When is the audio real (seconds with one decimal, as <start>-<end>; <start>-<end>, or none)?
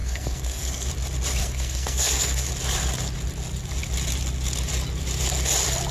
0.9-1.4; 2.5-5.9